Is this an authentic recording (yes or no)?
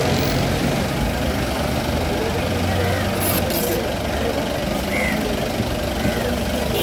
yes